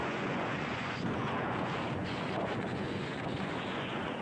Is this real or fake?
fake